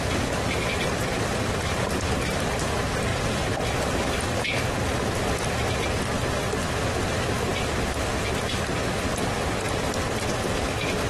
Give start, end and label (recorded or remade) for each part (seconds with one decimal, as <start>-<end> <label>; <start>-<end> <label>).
0.0-3.1 recorded; 3.1-3.7 remade; 3.7-11.1 recorded